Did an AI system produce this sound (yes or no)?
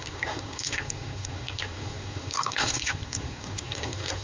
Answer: yes